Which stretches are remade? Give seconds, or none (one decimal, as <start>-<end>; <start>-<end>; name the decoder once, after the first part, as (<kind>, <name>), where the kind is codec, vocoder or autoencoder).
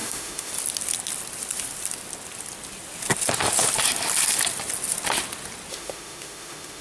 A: 0.0-0.5 (autoencoder, DAC-VAE); 5.7-6.8